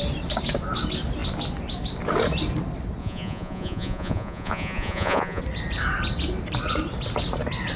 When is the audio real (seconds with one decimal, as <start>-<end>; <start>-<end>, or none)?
0.0-3.0; 5.4-7.8